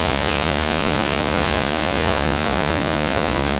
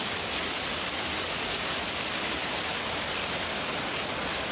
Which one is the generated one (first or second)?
first